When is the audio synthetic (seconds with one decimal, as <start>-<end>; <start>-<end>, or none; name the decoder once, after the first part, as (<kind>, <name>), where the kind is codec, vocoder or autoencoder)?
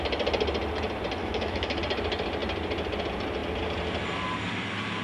1.2-1.8 (autoencoder, DAC-VAE)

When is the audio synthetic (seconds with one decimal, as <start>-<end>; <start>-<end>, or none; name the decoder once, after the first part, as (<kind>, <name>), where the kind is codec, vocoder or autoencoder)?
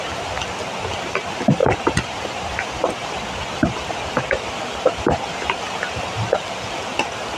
none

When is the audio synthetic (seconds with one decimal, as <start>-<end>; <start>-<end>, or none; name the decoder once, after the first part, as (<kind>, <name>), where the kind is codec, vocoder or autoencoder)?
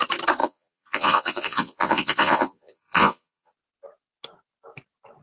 0.4-3.5 (vocoder, Vocos)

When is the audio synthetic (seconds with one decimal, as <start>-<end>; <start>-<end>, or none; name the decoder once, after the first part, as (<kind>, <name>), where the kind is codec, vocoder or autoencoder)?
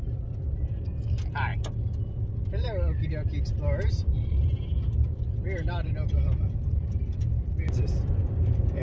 0.0-1.5 (vocoder, BigVGAN v2); 5.2-8.8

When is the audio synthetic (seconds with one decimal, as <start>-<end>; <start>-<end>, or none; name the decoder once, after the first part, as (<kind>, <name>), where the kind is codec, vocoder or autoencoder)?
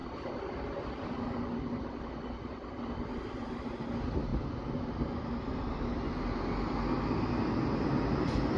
none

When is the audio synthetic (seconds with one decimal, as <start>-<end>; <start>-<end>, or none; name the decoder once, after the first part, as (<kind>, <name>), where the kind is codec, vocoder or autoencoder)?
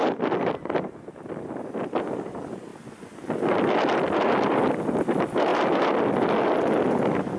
none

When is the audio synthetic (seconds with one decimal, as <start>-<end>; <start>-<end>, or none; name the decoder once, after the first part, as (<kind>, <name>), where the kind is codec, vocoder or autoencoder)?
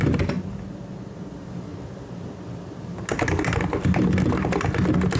none